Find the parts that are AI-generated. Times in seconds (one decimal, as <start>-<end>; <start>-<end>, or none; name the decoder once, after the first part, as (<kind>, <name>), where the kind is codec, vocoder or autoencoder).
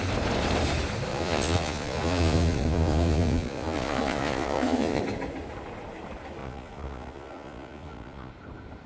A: 1.1-5.0 (vocoder, Vocos); 6.4-8.3